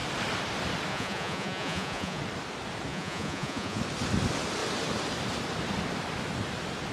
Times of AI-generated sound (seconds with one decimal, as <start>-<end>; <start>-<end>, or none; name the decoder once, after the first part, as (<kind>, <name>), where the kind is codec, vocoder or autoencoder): 0.9-2.2 (vocoder, Vocos); 2.9-3.8